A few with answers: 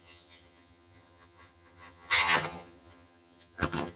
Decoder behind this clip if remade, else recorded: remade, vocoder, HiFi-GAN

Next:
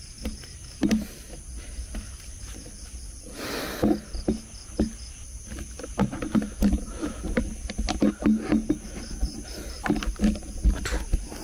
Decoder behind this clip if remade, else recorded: recorded